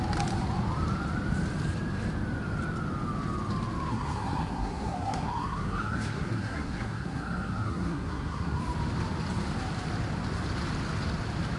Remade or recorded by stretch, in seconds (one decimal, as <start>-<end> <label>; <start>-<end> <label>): 0.0-3.9 recorded; 3.9-8.6 remade; 8.6-11.6 recorded